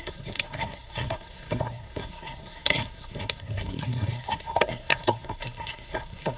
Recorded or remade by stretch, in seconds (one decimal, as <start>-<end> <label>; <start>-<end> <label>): 0.0-6.4 remade